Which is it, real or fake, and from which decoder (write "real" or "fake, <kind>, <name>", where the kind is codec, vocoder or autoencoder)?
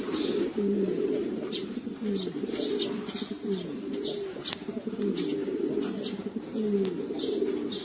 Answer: real